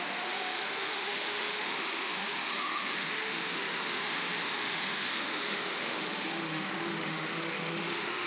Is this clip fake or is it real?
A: fake